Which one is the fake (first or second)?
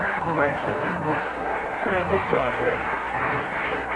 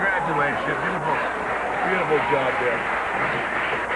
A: first